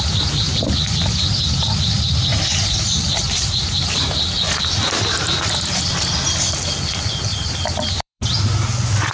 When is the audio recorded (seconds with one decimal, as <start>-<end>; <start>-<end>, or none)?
0.0-2.5; 3.9-7.3; 8.2-9.1